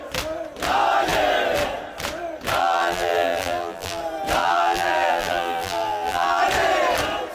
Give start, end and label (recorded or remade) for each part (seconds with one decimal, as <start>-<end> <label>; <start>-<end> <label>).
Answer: 0.0-2.6 recorded; 2.6-4.0 remade; 4.0-4.4 recorded; 4.4-6.4 remade; 6.4-7.3 recorded